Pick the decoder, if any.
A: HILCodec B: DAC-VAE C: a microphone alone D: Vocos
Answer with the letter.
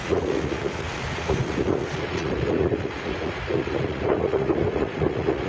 D